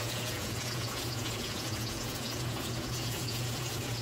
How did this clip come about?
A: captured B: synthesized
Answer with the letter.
B